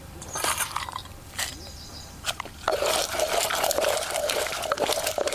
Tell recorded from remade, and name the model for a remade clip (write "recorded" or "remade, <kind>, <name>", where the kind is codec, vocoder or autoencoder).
remade, vocoder, BigVGAN v2